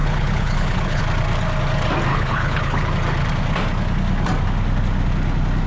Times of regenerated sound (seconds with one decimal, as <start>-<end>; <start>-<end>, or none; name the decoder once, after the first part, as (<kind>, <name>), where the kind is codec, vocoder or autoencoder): 0.0-1.0 (codec, HILCodec); 2.1-2.9